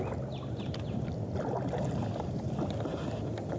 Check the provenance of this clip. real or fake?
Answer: real